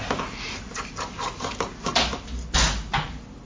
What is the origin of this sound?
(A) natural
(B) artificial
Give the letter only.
A